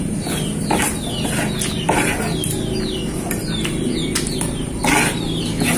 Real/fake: real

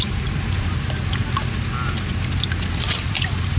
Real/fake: fake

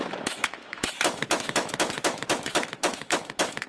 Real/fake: fake